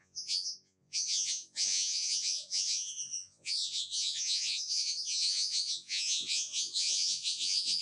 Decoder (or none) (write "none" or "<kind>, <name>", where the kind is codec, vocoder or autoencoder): vocoder, Vocos